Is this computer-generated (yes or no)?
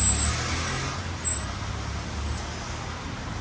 no